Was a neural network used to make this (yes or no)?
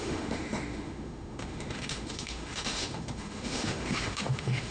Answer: yes